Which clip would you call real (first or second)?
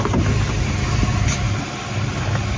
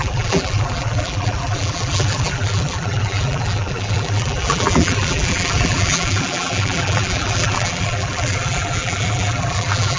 first